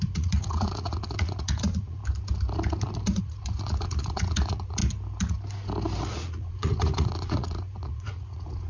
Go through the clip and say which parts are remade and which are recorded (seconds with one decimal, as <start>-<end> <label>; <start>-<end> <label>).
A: 0.0-2.0 remade; 2.0-3.2 recorded; 3.2-4.8 remade; 4.8-6.0 recorded; 6.0-8.7 remade